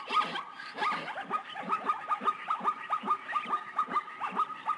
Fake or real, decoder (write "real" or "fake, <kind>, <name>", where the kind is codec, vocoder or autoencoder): fake, vocoder, BigVGAN v2